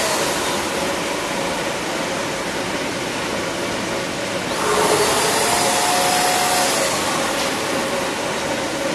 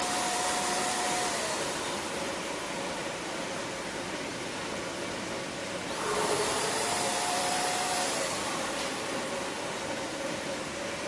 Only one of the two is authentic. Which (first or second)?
first